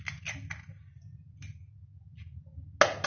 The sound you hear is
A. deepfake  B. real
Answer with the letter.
B